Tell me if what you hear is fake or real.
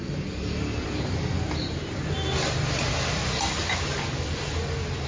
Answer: real